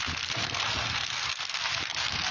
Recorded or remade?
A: recorded